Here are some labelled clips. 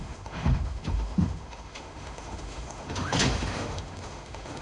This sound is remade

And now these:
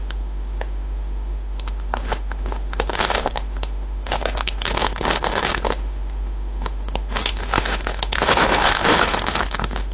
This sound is remade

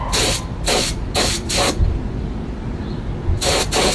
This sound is recorded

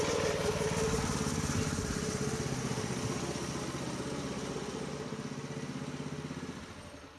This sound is recorded